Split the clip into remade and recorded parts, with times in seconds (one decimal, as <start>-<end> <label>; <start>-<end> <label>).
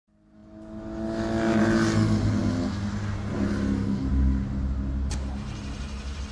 0.0-6.3 recorded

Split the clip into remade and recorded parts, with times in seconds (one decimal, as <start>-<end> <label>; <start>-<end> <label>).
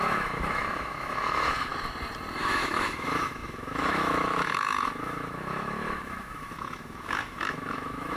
0.0-1.7 remade; 1.7-2.4 recorded; 2.4-8.2 remade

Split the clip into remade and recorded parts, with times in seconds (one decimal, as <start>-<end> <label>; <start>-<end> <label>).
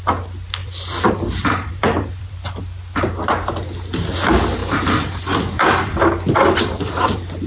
0.0-0.6 recorded; 0.6-2.6 remade; 2.6-4.6 recorded; 4.6-7.5 remade